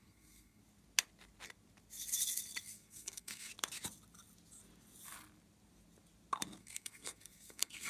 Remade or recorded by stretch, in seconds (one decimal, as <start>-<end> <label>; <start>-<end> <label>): 0.0-0.6 remade; 0.6-2.6 recorded; 2.6-3.5 remade; 3.5-6.6 recorded; 6.6-7.9 remade